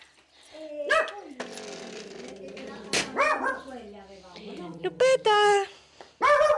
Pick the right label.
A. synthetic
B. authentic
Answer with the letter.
B